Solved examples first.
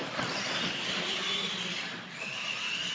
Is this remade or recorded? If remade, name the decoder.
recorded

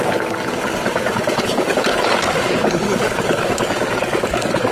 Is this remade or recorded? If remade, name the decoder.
remade, codec, DAC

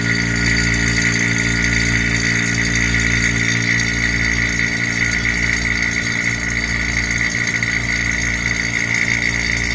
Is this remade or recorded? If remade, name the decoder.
recorded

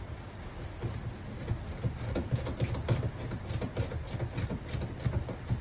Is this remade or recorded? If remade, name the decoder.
recorded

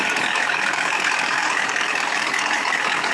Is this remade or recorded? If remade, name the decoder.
remade, codec, DAC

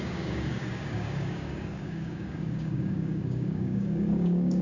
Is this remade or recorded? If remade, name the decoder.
remade, codec, DAC